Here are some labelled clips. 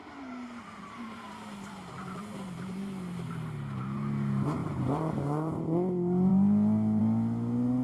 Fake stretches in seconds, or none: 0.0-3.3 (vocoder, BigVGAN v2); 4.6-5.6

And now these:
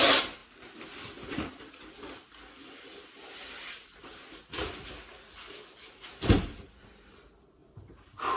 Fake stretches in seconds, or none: 4.0-4.6 (vocoder, BigVGAN v2); 7.6-8.4

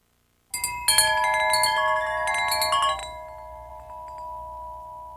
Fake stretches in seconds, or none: none